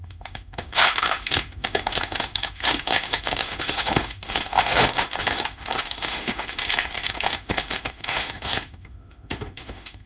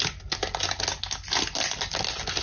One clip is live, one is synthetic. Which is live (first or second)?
second